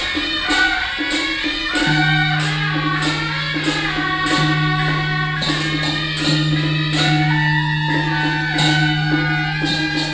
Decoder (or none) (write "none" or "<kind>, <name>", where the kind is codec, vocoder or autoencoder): none